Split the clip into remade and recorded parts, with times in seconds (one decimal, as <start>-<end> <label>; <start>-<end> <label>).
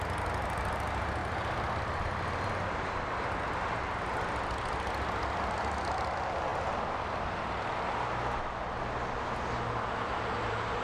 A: 0.0-1.2 recorded; 1.2-3.5 remade; 3.5-10.8 recorded